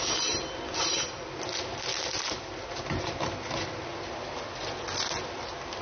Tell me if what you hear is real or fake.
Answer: real